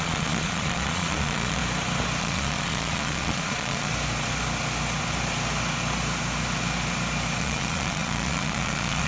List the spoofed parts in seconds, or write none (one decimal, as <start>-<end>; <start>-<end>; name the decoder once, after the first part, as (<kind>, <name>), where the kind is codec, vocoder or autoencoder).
0.0-1.6 (vocoder, Vocos); 2.2-3.9; 7.4-9.1